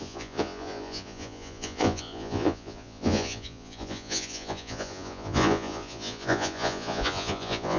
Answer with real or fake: fake